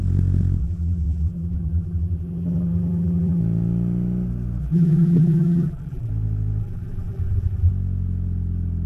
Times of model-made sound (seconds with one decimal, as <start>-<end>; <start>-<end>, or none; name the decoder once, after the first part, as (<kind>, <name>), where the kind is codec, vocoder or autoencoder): 0.6-3.4 (vocoder, BigVGAN v2); 4.6-6.1; 6.6-7.7